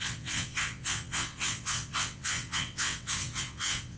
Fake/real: fake